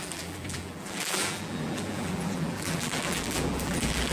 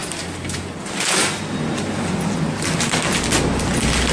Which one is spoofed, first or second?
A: first